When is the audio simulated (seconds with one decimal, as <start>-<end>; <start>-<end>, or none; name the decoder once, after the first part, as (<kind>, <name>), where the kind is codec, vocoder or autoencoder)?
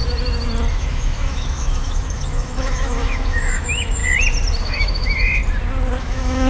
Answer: 0.7-4.0 (autoencoder, DAC-VAE); 4.6-5.4; 6.0-6.5